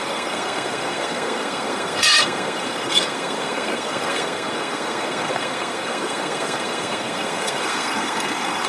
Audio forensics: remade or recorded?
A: remade